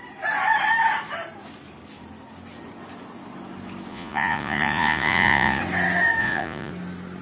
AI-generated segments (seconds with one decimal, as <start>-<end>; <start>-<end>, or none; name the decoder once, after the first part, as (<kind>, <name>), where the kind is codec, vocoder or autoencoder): 3.9-5.6 (vocoder, Vocos); 6.2-6.7